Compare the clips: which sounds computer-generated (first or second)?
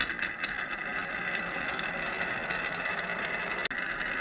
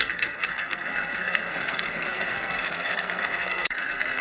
second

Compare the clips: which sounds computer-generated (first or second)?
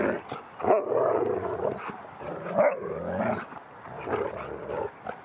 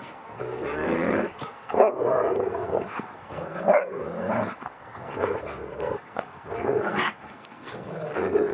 second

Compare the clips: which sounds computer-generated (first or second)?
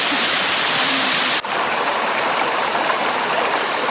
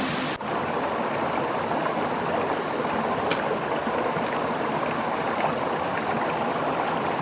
first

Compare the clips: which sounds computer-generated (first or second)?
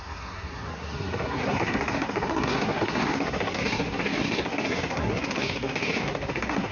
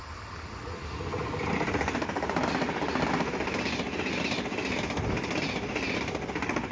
first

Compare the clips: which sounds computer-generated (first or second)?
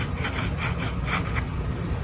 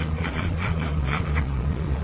second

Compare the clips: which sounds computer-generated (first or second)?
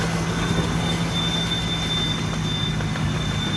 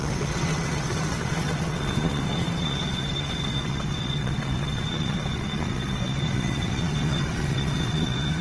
second